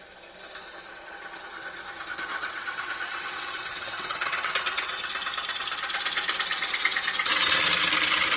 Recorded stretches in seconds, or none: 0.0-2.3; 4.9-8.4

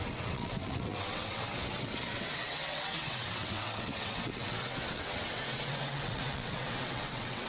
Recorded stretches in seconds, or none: none